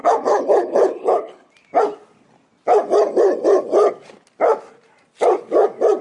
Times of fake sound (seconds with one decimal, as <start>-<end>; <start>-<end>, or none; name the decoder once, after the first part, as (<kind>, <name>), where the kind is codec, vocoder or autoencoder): 0.0-1.5 (codec, HILCodec)